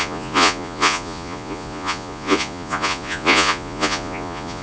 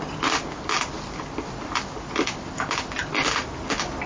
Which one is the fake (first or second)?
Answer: first